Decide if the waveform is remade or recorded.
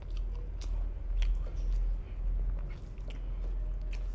recorded